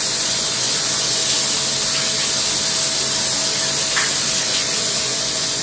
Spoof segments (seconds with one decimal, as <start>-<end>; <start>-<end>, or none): 0.0-1.2; 4.4-5.6